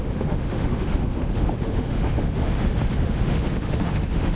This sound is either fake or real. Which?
fake